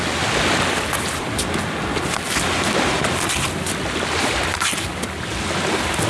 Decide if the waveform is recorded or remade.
recorded